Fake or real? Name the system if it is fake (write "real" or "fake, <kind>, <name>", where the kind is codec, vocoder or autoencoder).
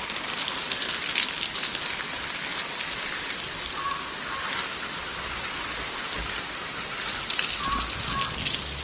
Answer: real